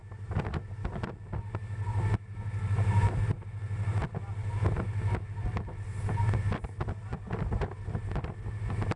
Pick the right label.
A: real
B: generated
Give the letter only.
A